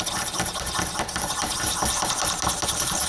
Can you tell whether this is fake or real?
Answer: real